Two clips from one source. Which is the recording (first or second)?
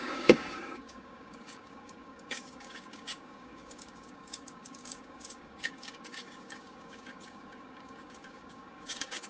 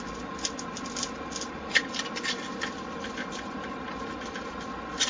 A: second